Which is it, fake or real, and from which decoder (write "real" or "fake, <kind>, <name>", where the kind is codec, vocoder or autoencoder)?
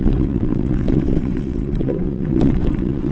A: fake, vocoder, WaveNeXt